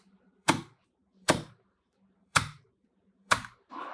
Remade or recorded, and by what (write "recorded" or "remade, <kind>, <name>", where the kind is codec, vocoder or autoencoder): remade, vocoder, BigVGAN v2